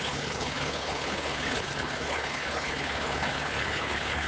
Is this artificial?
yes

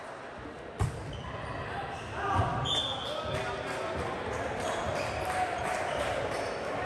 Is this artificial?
no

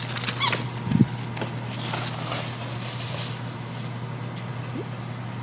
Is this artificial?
no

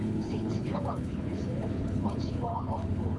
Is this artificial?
yes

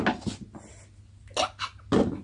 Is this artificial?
no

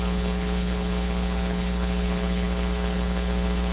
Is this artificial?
yes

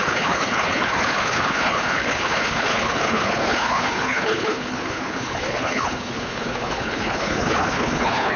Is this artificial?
yes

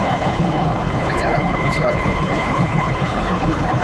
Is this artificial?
yes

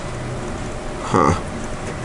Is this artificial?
no